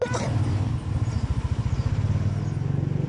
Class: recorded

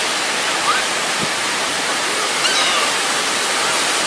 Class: recorded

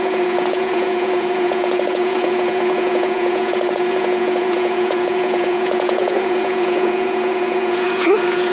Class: remade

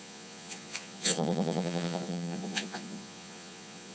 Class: remade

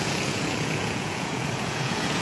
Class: remade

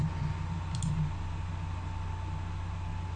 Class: recorded